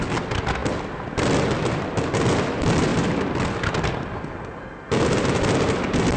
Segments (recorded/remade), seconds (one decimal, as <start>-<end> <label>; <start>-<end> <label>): 0.0-6.2 recorded